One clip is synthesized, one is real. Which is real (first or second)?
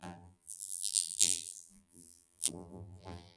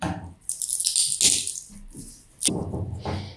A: second